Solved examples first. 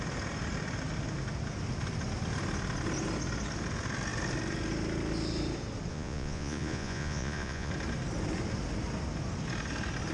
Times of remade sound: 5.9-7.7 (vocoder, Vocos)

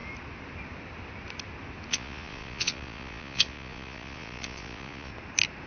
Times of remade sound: 1.9-5.1 (vocoder, Vocos)

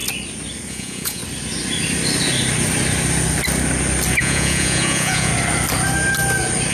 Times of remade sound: 0.7-1.2 (vocoder, Vocos); 4.2-5.3

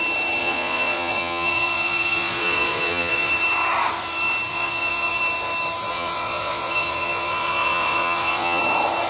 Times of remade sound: 0.4-3.3 (vocoder, Vocos); 4.5-5.2; 5.9-8.6

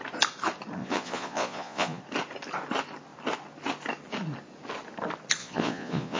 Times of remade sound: 0.8-2.0 (vocoder, Vocos); 5.4-6.2

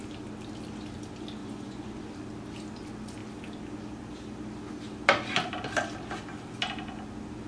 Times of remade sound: 1.4-2.0 (vocoder, Vocos)